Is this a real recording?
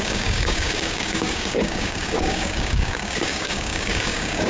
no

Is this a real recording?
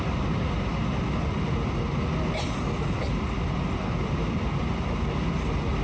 yes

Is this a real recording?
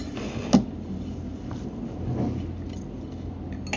yes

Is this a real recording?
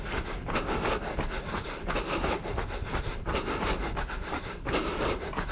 yes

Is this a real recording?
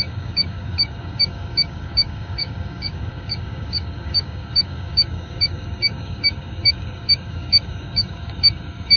no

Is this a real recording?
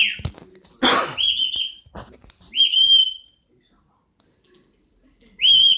yes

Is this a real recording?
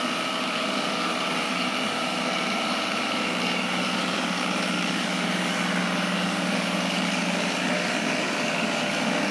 no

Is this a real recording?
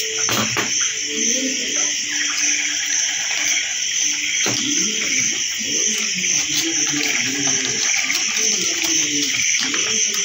yes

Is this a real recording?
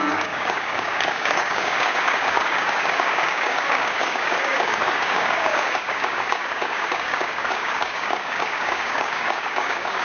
no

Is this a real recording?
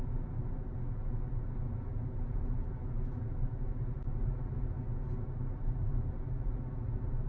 yes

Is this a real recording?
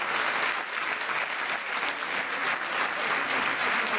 yes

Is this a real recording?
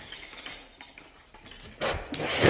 yes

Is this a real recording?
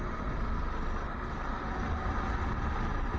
yes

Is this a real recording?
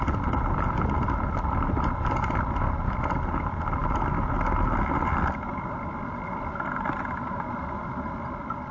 yes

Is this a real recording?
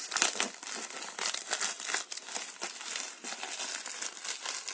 yes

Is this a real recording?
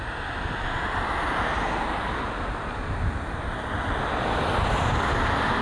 yes